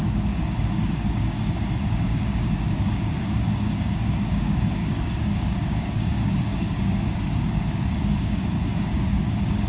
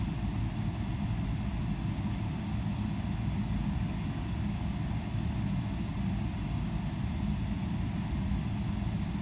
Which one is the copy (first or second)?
first